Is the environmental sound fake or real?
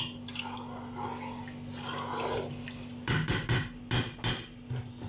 real